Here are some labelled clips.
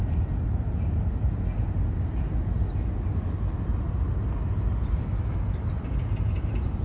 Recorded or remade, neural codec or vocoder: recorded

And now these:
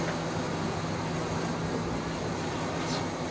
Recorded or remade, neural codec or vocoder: recorded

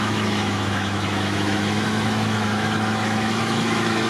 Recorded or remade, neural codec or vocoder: remade, autoencoder, DAC-VAE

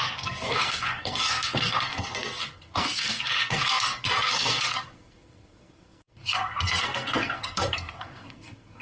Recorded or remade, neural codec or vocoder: remade, codec, SNAC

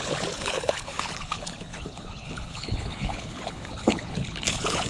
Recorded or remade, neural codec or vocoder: remade, codec, HILCodec